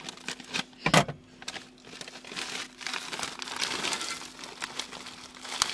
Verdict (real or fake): real